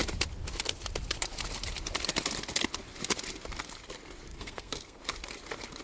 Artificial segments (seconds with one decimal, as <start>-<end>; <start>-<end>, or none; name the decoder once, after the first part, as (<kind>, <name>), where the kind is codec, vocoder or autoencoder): 4.3-5.0 (codec, SNAC)